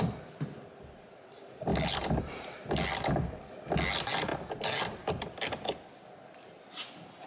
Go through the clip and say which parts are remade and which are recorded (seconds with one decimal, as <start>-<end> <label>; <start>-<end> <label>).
0.0-7.3 recorded

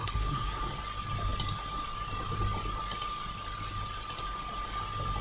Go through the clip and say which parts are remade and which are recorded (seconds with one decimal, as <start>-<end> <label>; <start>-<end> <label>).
0.0-0.6 remade; 0.6-5.2 recorded

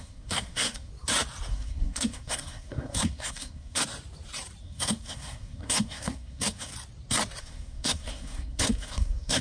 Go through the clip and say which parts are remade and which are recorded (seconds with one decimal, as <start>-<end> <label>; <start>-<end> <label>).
0.0-0.9 remade; 0.9-1.5 recorded; 1.5-3.8 remade; 3.8-4.6 recorded; 4.6-6.7 remade; 6.7-7.4 recorded; 7.4-9.4 remade

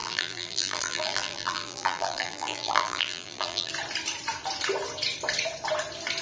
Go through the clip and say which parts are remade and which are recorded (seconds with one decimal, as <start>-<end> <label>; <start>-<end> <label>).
0.0-3.7 remade; 3.7-6.2 recorded

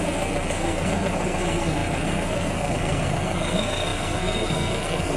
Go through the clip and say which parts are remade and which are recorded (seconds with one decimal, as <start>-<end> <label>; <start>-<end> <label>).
0.0-5.2 remade

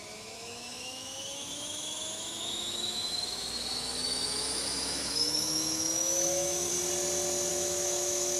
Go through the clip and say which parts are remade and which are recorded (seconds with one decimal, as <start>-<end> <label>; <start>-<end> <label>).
0.0-6.7 remade; 6.7-7.5 recorded; 7.5-8.4 remade